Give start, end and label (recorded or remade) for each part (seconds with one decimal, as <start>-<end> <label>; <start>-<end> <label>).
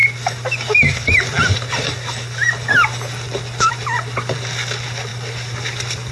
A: 0.0-6.1 recorded